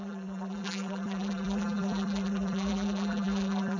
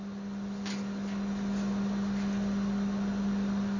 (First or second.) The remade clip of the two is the first